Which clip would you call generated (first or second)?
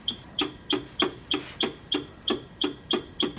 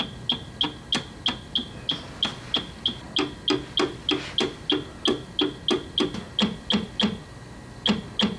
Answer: first